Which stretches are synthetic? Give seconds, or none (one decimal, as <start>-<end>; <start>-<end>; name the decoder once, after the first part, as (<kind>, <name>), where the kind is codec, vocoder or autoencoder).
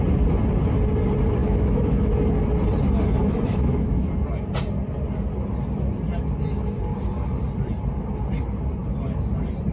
1.4-2.1 (autoencoder, DAC-VAE); 3.2-4.1